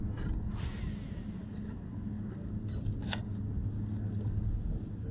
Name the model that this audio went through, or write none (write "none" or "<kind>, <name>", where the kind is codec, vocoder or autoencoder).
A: none